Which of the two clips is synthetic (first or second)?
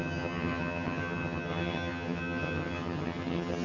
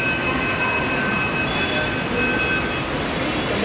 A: first